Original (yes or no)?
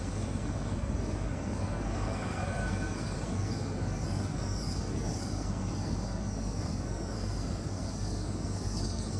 no